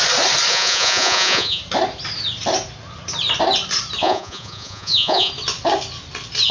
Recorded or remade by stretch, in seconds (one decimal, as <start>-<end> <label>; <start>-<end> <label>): 0.0-0.5 recorded; 0.5-1.6 remade; 1.6-4.0 recorded; 4.0-5.3 remade; 5.3-6.5 recorded

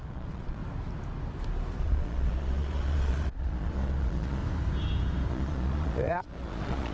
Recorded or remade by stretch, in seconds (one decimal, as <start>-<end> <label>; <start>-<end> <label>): 0.0-0.6 remade; 0.6-1.8 recorded; 1.8-4.4 remade; 4.4-5.3 recorded; 5.3-6.9 remade

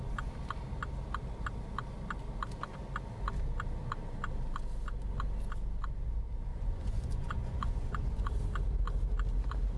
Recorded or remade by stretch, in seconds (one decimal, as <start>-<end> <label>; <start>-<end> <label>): 0.0-6.5 recorded; 6.5-8.3 remade; 8.3-9.8 recorded

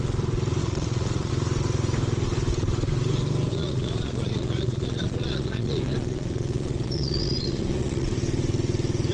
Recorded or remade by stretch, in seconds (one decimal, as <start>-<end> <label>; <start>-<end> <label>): 0.0-0.6 recorded; 0.6-1.3 remade; 1.3-3.5 recorded; 3.5-8.1 remade; 8.1-9.1 recorded

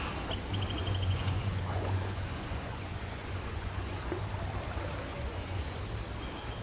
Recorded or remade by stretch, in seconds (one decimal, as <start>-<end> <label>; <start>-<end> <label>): 0.0-0.8 recorded; 0.8-4.2 remade; 4.2-5.1 recorded; 5.1-5.8 remade; 5.8-6.6 recorded

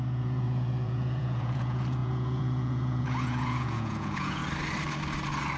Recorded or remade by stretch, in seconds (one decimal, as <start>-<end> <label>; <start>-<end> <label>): 0.0-4.4 remade; 4.4-5.6 recorded

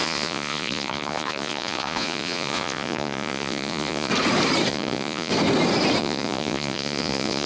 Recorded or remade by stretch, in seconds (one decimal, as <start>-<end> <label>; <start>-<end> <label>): 0.0-4.1 remade; 4.1-4.7 recorded; 4.7-5.3 remade; 5.3-6.0 recorded; 6.0-7.5 remade

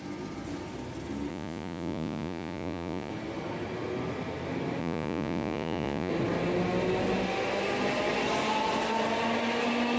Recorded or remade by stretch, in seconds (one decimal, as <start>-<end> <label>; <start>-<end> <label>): 0.0-1.3 recorded; 1.3-3.1 remade; 3.1-4.8 recorded; 4.8-6.1 remade; 6.1-10.0 recorded